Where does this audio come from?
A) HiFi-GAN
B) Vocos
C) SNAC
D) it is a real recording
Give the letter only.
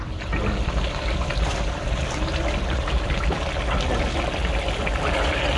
D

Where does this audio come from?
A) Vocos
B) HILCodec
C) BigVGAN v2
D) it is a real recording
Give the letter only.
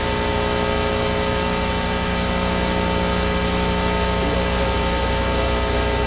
D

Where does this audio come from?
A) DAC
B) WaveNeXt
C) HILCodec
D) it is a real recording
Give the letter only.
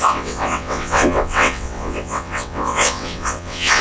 B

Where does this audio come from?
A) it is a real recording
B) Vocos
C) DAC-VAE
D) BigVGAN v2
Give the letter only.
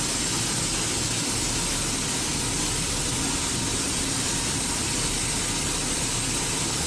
A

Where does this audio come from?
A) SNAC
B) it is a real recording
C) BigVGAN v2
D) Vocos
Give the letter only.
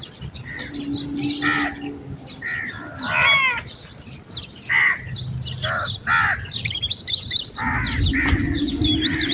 B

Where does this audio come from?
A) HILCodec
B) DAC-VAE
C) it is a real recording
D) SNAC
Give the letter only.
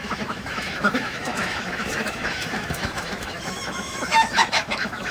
B